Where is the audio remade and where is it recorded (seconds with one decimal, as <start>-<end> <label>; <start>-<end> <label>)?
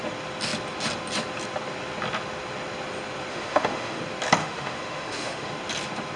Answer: 0.0-3.3 recorded; 3.3-4.0 remade; 4.0-4.4 recorded; 4.4-5.5 remade; 5.5-6.2 recorded